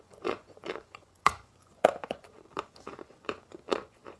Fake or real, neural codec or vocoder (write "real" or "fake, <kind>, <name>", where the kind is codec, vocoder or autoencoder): fake, vocoder, Vocos